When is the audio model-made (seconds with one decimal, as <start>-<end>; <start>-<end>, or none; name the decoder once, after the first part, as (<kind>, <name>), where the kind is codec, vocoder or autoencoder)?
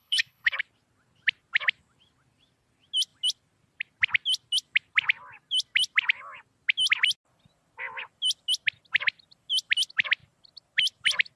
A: 0.0-0.6 (codec, HILCodec)